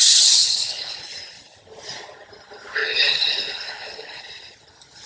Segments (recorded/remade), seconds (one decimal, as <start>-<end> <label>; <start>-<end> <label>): 0.0-0.4 recorded; 0.4-1.0 remade; 1.0-2.8 recorded; 2.8-4.2 remade; 4.2-5.1 recorded